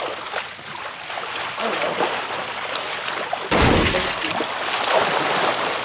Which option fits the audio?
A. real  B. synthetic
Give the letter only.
A